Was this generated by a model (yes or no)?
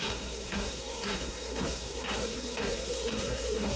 yes